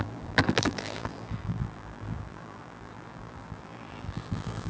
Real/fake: fake